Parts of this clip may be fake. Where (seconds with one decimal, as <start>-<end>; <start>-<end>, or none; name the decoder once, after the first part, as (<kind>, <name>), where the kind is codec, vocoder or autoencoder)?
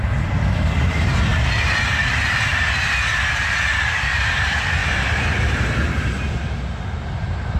none